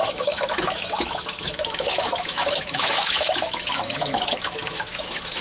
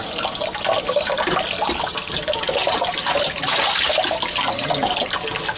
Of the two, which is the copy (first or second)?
first